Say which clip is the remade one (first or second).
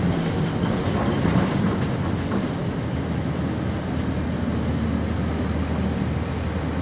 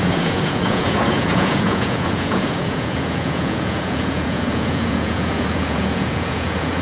second